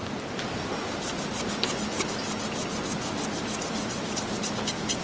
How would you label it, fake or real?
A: real